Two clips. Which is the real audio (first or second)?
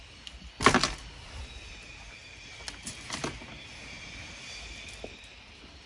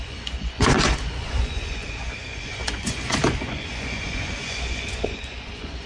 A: first